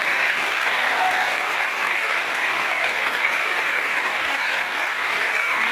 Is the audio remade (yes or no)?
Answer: yes